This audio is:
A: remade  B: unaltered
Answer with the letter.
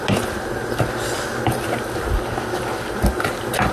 B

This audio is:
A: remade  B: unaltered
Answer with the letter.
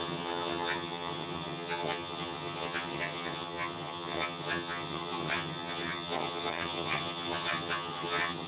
A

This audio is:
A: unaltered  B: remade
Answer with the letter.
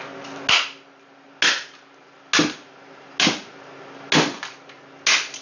A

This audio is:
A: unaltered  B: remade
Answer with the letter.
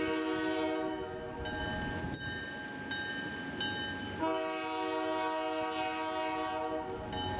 A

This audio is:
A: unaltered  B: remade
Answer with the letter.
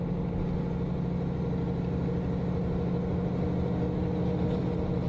A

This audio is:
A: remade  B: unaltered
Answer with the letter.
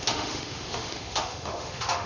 A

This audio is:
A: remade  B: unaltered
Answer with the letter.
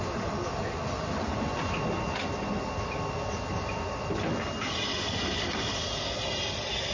B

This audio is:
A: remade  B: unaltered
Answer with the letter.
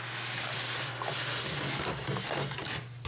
B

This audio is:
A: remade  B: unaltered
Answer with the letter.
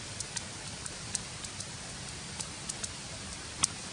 B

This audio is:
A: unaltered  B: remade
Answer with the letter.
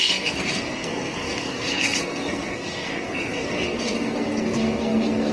B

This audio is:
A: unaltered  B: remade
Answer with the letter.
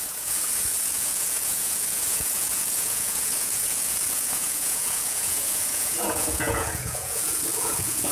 B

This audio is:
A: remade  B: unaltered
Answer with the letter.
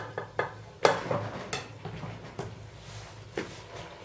B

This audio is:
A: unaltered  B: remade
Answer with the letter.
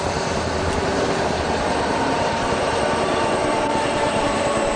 B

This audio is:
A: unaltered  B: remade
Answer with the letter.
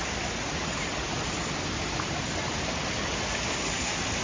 A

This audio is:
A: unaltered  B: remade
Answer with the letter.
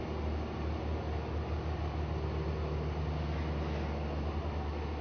A